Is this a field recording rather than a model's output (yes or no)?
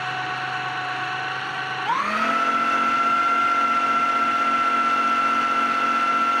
yes